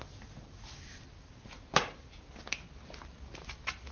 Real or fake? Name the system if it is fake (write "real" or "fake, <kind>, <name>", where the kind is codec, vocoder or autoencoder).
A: real